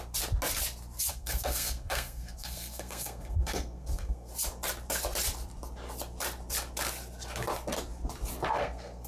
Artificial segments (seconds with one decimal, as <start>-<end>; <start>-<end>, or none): 1.1-4.3; 8.6-9.1